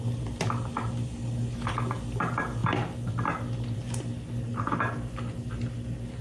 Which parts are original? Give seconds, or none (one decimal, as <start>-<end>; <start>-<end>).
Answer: 0.0-6.2